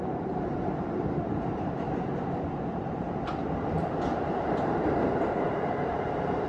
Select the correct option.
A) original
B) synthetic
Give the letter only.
B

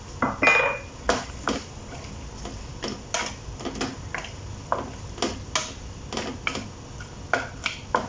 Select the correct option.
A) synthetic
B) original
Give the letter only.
B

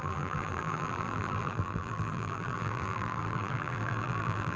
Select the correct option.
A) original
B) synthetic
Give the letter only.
B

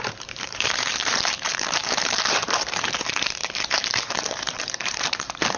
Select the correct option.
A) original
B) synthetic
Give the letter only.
B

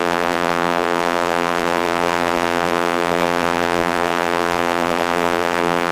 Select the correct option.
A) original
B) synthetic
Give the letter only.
B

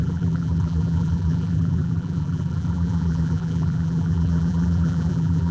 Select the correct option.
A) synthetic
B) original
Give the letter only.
A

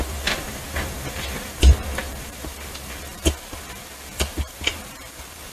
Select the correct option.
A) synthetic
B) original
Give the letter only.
A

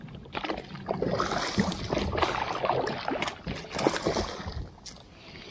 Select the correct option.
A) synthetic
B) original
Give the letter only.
B